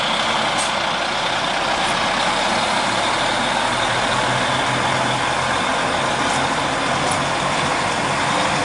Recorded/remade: recorded